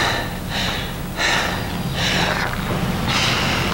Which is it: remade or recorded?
recorded